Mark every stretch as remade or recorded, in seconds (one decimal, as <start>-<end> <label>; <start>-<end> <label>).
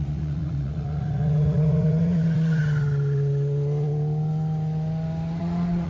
0.0-2.6 remade; 2.6-5.4 recorded; 5.4-5.9 remade